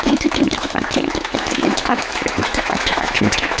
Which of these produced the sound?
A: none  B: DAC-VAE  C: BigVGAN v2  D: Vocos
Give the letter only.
B